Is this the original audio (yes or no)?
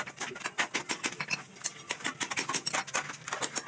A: yes